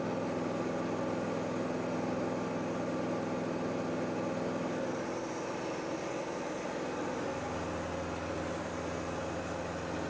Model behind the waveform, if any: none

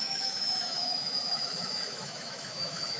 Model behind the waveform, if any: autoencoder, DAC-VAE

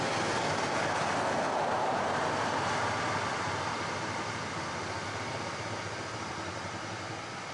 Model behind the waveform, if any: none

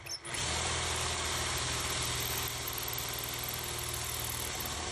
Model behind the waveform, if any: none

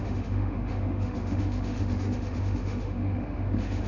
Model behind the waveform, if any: autoencoder, DAC-VAE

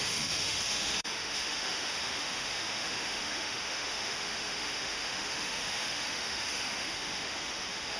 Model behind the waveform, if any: autoencoder, DAC-VAE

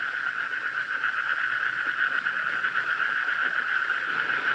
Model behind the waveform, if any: none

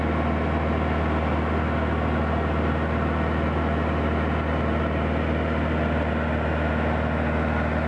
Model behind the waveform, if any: none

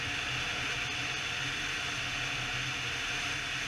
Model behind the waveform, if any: none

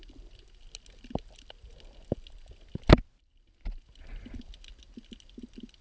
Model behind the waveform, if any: none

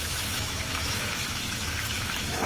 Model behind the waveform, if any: autoencoder, DAC-VAE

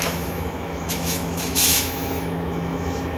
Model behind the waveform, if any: autoencoder, DAC-VAE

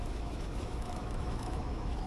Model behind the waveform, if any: autoencoder, DAC-VAE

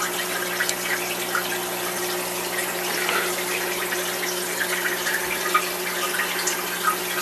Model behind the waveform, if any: none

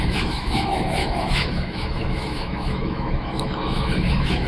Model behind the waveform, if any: autoencoder, DAC-VAE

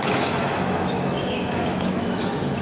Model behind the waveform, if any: autoencoder, DAC-VAE